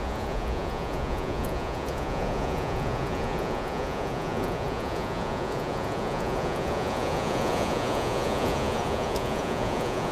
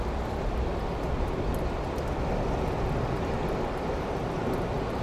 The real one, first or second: second